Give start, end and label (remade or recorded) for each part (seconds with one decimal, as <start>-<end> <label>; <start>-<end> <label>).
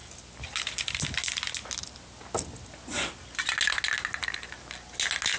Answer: 0.0-5.4 recorded